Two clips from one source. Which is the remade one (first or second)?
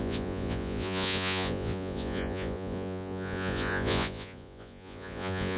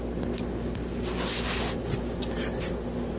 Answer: first